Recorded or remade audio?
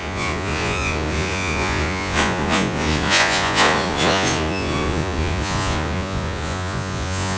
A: remade